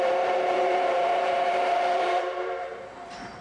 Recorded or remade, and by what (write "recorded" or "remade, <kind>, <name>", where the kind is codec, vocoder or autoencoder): remade, vocoder, BigVGAN v2